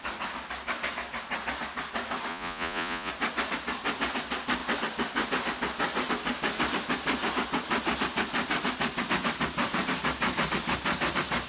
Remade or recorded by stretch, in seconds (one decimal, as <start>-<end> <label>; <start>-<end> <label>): 0.0-2.3 recorded; 2.3-3.1 remade; 3.1-11.5 recorded